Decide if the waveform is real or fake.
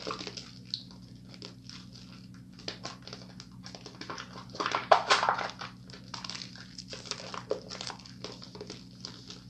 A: real